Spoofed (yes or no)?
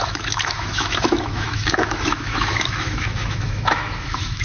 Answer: yes